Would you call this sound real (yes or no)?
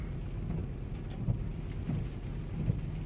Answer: yes